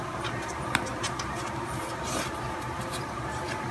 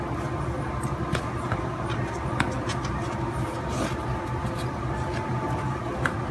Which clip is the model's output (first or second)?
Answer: first